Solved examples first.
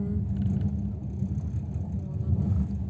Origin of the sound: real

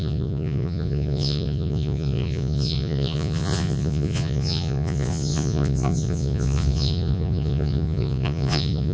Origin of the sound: fake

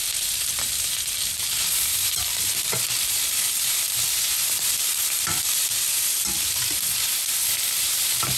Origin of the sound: fake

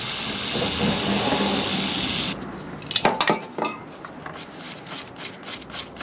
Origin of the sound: real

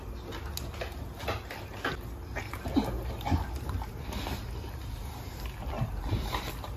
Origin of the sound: real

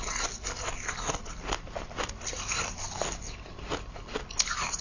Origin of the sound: real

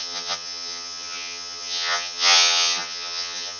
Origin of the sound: fake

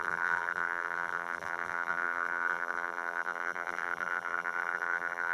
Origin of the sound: fake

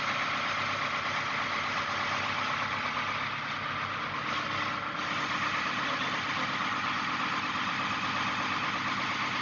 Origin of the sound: real